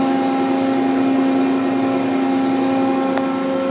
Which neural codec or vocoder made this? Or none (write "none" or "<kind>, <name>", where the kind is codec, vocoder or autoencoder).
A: none